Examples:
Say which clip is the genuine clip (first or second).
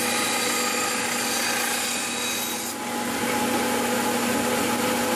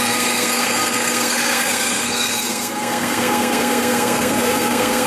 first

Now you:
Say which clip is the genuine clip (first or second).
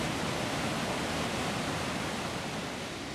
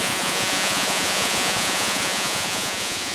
first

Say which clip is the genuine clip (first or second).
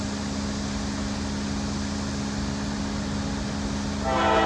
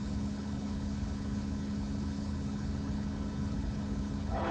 first